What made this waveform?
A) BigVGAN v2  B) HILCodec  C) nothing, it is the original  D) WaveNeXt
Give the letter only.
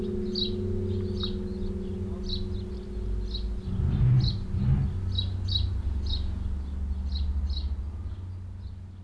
C